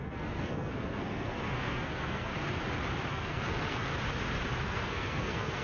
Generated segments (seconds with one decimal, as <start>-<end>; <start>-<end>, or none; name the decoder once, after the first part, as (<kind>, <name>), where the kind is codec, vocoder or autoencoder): 0.0-2.3 (codec, SNAC); 3.1-3.9; 4.6-5.6